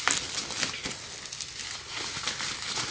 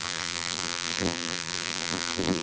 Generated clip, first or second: second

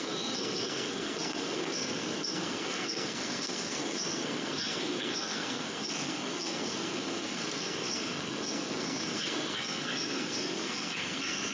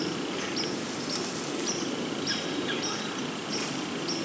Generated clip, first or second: first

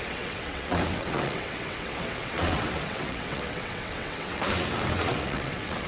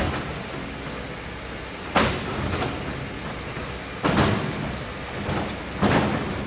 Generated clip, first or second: first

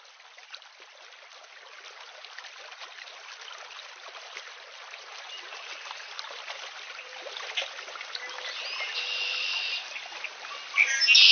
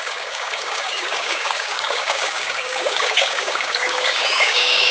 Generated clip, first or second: second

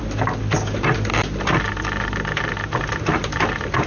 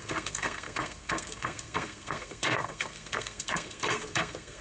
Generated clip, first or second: second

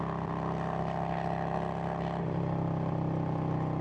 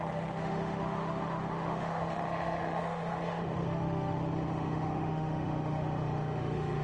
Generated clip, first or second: second